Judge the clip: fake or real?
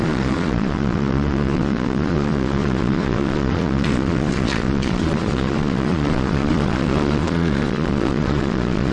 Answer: fake